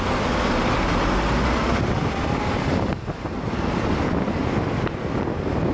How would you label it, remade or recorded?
recorded